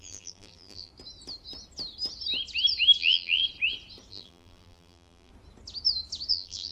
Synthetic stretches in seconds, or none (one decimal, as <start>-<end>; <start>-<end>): 0.0-0.9; 3.0-3.4; 4.1-5.3; 6.3-6.7